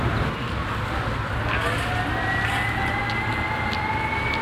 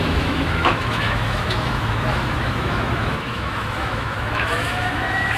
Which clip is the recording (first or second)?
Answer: first